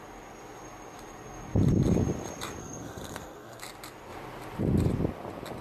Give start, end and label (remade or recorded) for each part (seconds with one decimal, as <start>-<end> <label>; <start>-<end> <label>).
0.0-2.6 recorded; 2.6-3.6 remade; 3.6-5.6 recorded